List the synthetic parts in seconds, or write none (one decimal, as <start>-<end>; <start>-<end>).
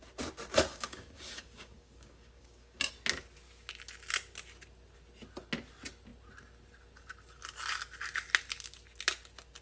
0.7-2.9